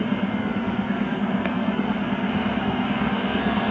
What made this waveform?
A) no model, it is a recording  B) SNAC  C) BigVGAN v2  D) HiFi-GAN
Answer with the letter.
B